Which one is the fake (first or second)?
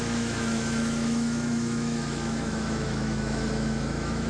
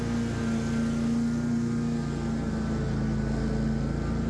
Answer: first